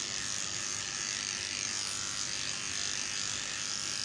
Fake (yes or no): no